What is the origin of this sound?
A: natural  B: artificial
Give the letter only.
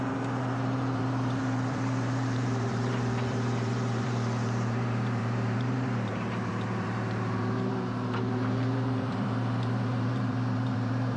B